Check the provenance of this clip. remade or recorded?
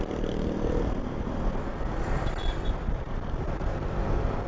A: recorded